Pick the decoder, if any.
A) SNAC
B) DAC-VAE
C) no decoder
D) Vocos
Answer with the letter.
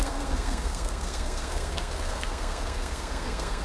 A